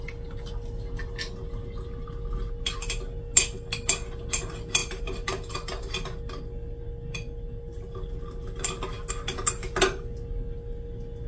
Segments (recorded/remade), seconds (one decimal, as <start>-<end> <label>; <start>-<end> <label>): 0.0-11.3 recorded